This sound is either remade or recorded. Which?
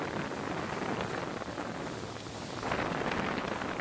recorded